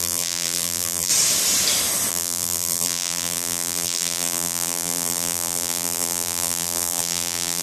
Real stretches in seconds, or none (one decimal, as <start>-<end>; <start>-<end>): 1.1-2.1